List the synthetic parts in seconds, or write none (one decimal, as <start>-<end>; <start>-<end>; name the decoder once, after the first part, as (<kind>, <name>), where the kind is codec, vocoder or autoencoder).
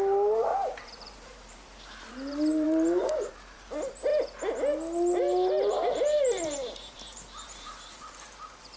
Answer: 0.0-4.1 (vocoder, BigVGAN v2); 5.9-8.8